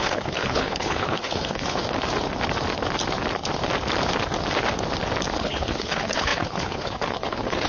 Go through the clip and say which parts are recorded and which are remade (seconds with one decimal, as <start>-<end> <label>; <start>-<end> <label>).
0.0-1.8 remade; 1.8-5.4 recorded; 5.4-7.7 remade